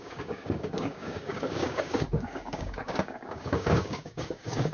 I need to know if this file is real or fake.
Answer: fake